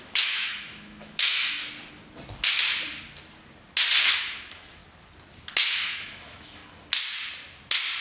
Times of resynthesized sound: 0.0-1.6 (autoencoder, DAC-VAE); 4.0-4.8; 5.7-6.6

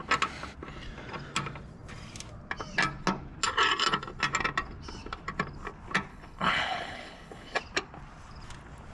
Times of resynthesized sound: 6.1-7.6 (codec, HILCodec)

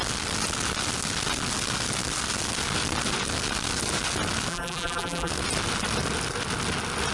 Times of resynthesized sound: 4.5-5.3 (vocoder, BigVGAN v2)

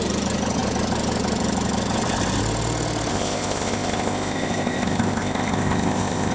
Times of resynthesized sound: 3.1-6.3 (codec, ZipCodec)

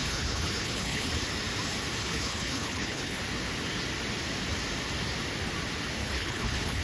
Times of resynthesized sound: 0.0-1.1 (codec, HILCodec); 2.0-3.2; 6.0-6.8